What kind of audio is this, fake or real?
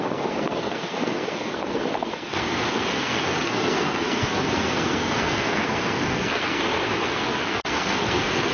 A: fake